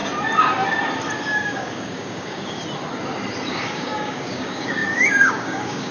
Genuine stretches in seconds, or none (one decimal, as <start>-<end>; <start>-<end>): 0.0-1.2; 2.6-3.5